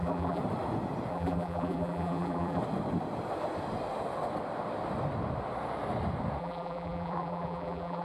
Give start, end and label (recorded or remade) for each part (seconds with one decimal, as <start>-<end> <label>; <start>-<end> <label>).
0.0-0.4 remade; 0.4-1.1 recorded; 1.1-2.6 remade; 2.6-6.4 recorded; 6.4-8.0 remade